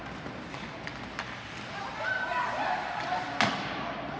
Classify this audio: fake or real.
real